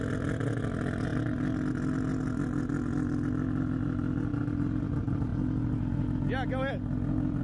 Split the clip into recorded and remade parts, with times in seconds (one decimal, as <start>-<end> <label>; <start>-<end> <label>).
0.0-1.1 remade; 1.1-4.8 recorded; 4.8-5.3 remade; 5.3-6.7 recorded; 6.7-7.4 remade